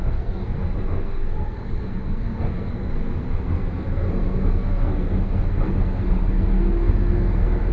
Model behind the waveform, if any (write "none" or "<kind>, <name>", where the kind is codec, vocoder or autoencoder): codec, SNAC